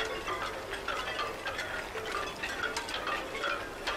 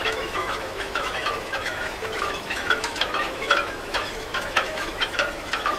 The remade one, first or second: second